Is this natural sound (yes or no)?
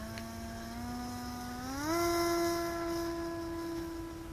yes